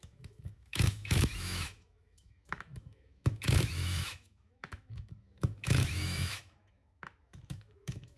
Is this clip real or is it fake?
fake